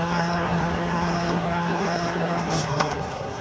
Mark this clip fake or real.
fake